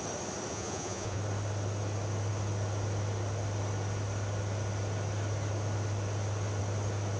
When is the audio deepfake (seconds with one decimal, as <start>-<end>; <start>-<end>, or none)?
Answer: 0.5-1.2